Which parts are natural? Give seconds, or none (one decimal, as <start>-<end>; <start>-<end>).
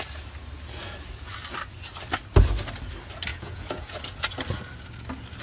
0.0-3.3; 4.0-5.4